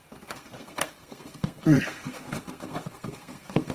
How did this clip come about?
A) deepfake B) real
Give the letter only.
A